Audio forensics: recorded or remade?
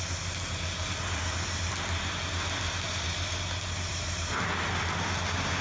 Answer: recorded